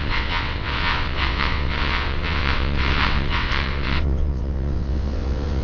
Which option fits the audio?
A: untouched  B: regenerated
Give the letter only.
B